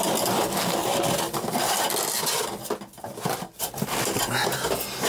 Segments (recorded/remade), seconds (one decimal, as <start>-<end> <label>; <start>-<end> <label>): 0.0-5.1 recorded

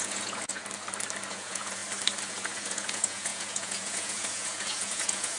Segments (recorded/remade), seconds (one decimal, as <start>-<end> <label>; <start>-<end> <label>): 0.0-0.6 remade; 0.6-1.3 recorded; 1.3-1.8 remade; 1.8-2.3 recorded; 2.3-5.4 remade

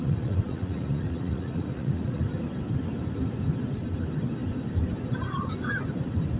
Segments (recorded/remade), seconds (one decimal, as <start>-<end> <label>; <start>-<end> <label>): 0.0-2.2 remade; 2.2-6.4 recorded